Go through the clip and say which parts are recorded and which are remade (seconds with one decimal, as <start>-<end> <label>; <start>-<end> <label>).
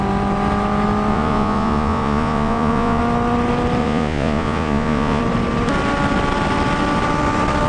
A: 0.0-1.1 recorded; 1.1-3.0 remade; 3.0-3.8 recorded; 3.8-5.2 remade; 5.2-7.7 recorded